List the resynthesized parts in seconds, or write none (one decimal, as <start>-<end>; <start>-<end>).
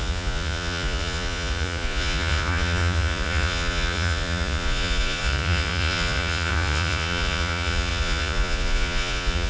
0.0-9.5